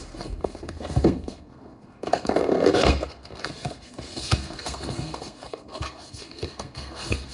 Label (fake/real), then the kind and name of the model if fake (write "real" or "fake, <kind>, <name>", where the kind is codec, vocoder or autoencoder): fake, codec, SNAC